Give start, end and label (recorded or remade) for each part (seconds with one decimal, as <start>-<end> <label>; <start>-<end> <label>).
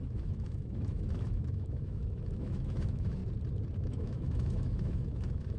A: 0.0-3.2 remade; 3.2-3.8 recorded; 3.8-5.6 remade